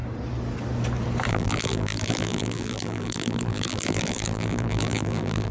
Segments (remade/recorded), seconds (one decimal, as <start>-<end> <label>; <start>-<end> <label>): 0.0-1.3 recorded; 1.3-5.5 remade